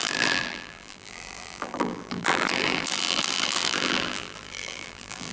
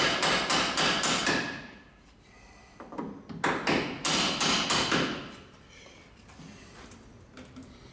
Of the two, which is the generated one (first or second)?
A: first